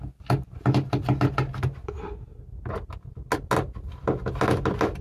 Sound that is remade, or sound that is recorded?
recorded